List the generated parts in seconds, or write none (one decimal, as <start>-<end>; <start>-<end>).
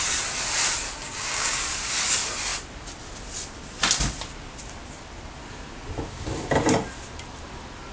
1.0-1.6